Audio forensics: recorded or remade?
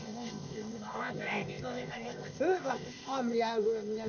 remade